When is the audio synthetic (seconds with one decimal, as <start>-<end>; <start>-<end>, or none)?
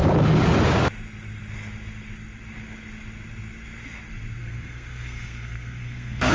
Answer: 4.4-6.3